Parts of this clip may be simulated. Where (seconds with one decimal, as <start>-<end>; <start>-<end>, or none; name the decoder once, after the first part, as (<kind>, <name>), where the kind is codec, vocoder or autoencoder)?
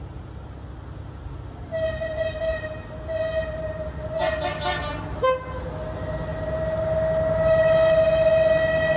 none